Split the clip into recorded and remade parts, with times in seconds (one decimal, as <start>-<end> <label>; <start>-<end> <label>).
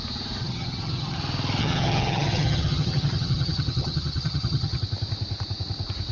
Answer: 0.0-0.4 recorded; 0.4-1.2 remade; 1.2-1.6 recorded; 1.6-4.8 remade; 4.8-6.1 recorded